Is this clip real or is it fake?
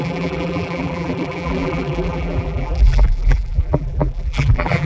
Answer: fake